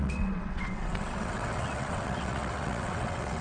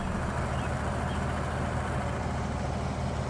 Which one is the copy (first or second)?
first